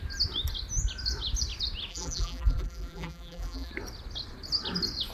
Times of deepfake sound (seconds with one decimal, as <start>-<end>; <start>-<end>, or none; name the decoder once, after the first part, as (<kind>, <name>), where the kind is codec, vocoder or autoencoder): 1.9-3.7 (vocoder, BigVGAN v2)